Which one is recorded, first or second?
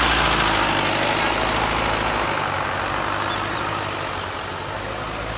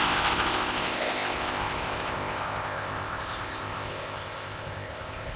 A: first